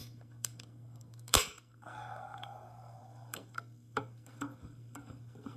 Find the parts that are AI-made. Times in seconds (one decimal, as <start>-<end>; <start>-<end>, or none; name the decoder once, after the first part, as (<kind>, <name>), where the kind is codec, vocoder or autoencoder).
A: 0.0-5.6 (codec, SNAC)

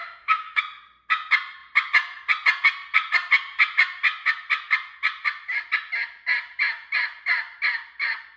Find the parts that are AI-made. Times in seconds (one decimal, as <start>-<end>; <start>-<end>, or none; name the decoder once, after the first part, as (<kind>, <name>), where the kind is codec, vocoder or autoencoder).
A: 0.0-0.6 (autoencoder, DAC-VAE)

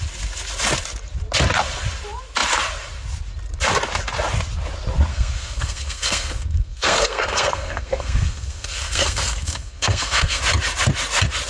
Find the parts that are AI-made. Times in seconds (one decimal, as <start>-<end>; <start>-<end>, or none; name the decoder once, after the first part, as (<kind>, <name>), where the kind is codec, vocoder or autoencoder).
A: 5.1-10.4 (codec, SNAC)

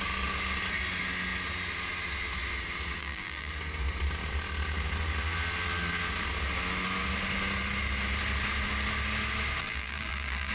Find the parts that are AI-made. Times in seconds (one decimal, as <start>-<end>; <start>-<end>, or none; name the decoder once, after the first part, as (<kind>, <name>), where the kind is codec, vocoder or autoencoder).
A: 3.0-3.5 (vocoder, BigVGAN v2); 9.6-10.5